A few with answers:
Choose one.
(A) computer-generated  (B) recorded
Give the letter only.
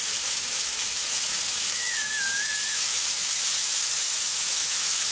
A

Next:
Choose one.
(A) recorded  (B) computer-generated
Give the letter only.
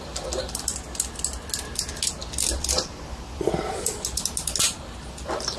A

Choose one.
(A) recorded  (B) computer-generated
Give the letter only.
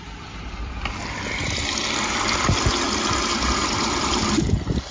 A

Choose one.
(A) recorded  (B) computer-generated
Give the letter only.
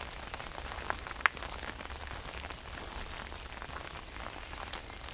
A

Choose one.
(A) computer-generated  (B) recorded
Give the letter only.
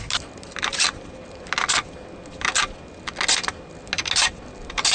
B